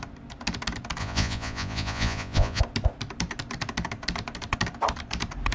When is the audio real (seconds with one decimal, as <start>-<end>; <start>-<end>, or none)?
0.0-1.0; 2.6-5.5